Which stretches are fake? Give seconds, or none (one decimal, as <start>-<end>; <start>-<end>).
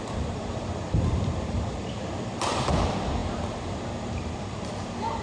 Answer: 0.0-5.2